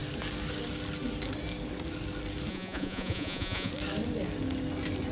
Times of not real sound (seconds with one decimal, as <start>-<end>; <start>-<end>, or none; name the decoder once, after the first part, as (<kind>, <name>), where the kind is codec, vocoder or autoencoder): 2.5-3.7 (vocoder, Vocos)